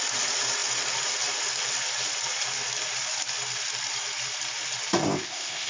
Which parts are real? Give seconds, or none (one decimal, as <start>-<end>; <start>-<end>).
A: 0.0-5.0